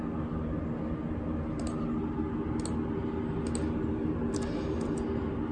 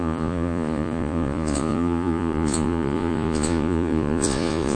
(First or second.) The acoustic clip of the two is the first